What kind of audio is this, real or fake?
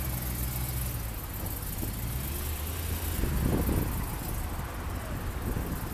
real